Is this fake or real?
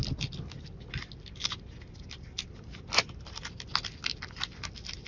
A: real